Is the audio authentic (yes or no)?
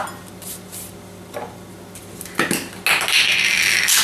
yes